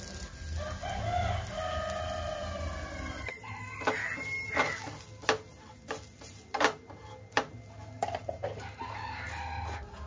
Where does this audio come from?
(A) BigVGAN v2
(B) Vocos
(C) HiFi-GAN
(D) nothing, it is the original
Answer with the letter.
D